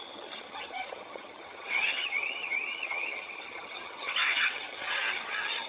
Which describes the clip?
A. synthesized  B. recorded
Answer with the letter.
A